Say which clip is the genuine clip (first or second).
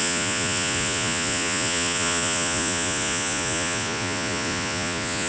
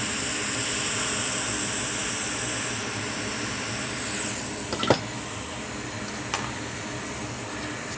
second